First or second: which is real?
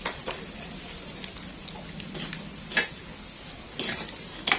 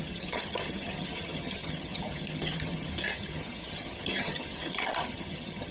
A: first